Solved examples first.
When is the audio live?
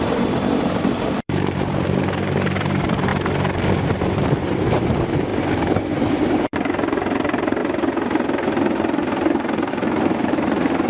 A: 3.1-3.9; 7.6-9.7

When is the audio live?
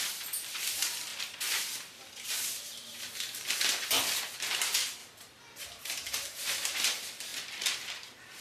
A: 5.0-5.6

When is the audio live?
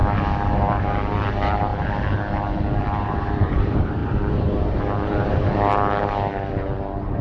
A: 0.0-0.5; 1.7-2.8; 5.5-6.5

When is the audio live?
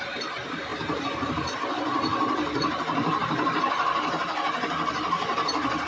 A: none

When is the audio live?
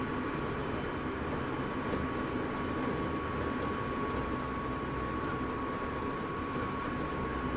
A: 0.6-5.2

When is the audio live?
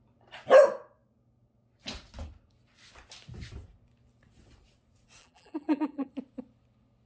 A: 0.0-5.2; 6.1-7.1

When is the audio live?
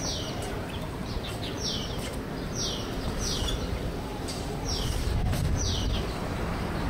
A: 2.1-3.4; 4.1-5.0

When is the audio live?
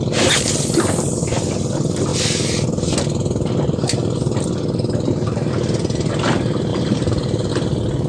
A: 0.0-6.7; 7.5-8.1